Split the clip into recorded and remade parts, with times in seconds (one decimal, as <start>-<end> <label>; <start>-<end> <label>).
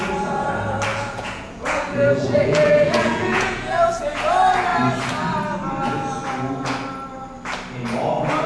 0.0-0.9 recorded; 0.9-4.2 remade; 4.2-8.5 recorded